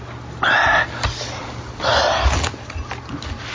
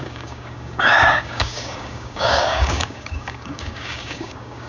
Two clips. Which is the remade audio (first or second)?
second